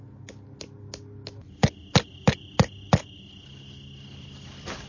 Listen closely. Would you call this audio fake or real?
real